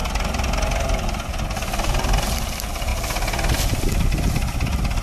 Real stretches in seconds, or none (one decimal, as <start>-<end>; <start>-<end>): 0.0-5.0